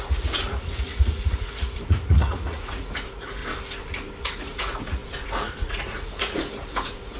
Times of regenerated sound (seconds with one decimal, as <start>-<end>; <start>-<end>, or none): 0.0-3.4; 4.2-7.2